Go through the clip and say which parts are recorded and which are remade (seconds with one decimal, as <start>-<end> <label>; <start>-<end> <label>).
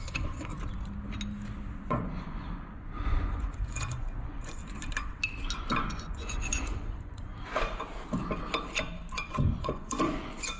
0.0-0.5 remade; 0.5-1.8 recorded; 1.8-4.6 remade; 4.6-5.8 recorded; 5.8-7.3 remade; 7.3-9.1 recorded; 9.1-10.6 remade